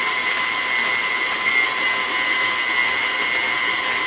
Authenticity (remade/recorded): recorded